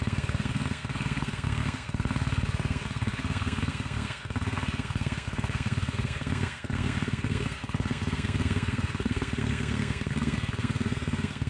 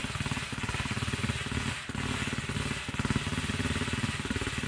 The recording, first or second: second